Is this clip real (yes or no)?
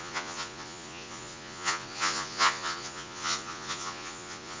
no